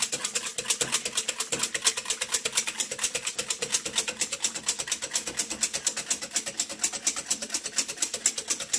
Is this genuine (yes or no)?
yes